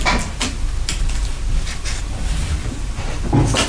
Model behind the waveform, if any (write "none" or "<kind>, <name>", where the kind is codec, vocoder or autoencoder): none